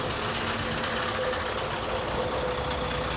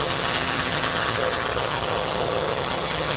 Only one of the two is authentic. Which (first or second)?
first